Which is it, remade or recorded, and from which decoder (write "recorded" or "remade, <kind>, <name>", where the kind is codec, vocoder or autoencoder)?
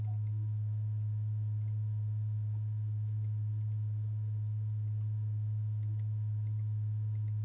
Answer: recorded